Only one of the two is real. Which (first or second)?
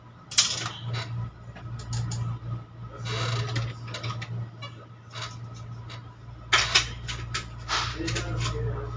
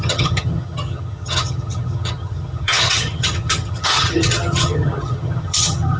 first